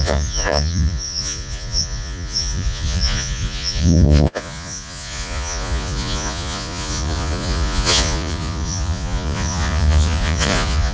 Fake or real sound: fake